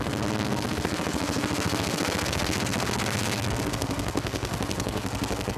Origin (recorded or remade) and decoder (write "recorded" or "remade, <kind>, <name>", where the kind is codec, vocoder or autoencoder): remade, codec, SNAC